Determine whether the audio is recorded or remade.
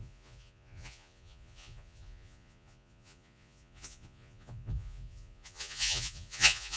remade